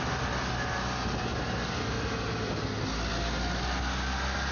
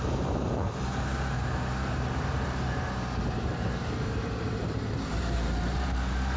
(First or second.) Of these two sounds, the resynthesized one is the second